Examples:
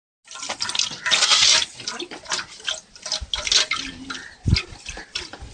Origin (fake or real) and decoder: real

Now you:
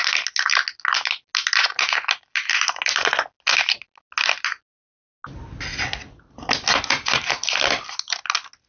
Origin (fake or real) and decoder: real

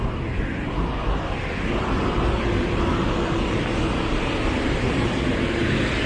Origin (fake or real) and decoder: real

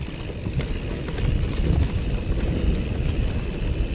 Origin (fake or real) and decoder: real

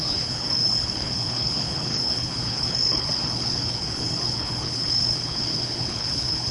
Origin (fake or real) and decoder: fake, codec, HILCodec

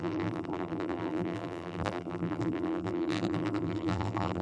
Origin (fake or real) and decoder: fake, vocoder, BigVGAN v2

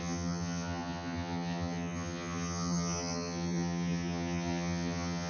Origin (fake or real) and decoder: fake, vocoder, HiFi-GAN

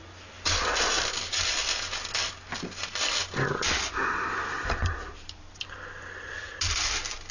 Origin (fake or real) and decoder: real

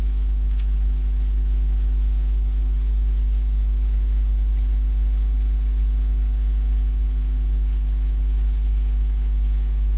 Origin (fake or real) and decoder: fake, codec, HILCodec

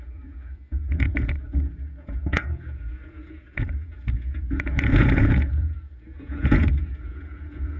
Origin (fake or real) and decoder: fake, vocoder, Vocos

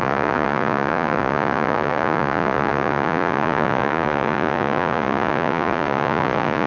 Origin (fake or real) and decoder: fake, vocoder, Vocos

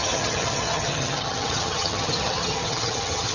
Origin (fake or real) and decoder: fake, vocoder, HiFi-GAN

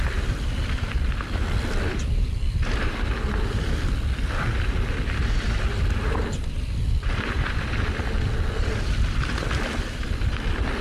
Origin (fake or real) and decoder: fake, vocoder, BigVGAN v2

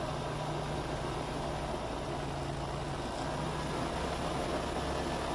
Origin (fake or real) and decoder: real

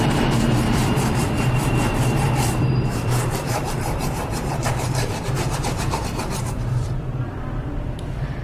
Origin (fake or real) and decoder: fake, vocoder, BigVGAN v2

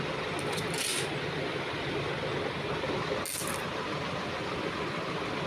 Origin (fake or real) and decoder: real